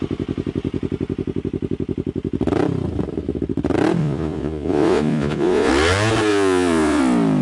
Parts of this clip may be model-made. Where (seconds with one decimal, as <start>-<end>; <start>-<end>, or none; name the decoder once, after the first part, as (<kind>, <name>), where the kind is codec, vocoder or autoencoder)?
4.0-5.7 (vocoder, Vocos); 6.3-7.0